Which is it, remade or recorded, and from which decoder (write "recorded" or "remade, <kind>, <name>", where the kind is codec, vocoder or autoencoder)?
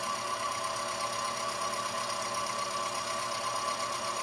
recorded